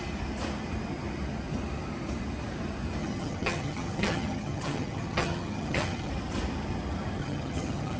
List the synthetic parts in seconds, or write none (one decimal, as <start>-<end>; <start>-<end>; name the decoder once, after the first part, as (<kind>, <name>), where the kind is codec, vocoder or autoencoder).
3.0-6.1 (vocoder, HiFi-GAN); 7.2-8.0